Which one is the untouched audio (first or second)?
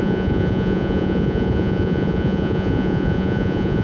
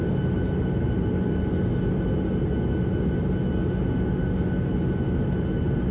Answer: second